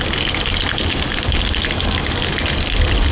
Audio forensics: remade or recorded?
recorded